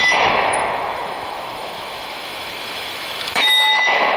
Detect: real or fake fake